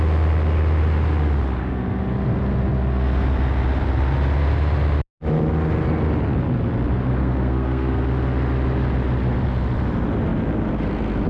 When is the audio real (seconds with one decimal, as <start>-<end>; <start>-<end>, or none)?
0.0-7.2; 8.0-11.3